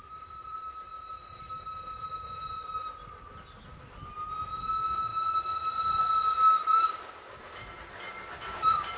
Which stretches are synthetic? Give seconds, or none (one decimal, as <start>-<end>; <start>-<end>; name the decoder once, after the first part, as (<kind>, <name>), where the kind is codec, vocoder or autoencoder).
none

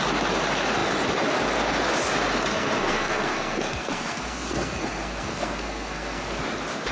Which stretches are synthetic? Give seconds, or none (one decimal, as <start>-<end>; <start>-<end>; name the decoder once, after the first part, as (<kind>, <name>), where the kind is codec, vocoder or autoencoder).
2.5-6.4 (codec, SNAC)

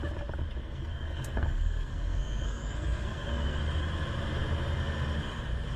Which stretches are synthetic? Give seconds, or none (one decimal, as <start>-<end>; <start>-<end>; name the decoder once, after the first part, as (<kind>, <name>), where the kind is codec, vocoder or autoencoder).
0.6-3.6 (codec, SNAC)

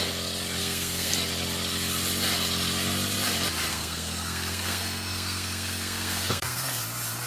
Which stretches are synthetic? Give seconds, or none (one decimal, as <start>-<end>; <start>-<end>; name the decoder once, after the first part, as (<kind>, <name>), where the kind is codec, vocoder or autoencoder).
0.6-1.1 (codec, SNAC); 3.7-6.8

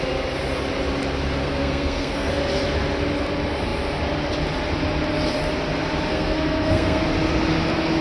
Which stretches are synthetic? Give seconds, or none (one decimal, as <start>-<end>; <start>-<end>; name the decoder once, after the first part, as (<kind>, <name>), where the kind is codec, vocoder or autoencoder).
1.4-2.3 (codec, SNAC); 6.1-7.0

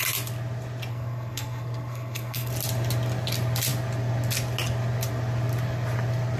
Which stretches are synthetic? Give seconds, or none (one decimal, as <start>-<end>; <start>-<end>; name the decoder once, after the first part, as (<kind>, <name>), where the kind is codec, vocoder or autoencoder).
0.9-2.5 (codec, SNAC)

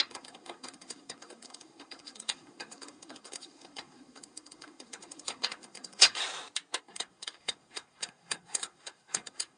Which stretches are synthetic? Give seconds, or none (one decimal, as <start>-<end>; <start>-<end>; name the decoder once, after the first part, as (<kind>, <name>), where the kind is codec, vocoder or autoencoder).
0.0-6.2 (codec, SNAC); 6.8-9.6